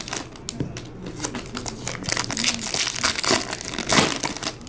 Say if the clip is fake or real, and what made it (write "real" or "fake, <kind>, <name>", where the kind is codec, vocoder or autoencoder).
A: real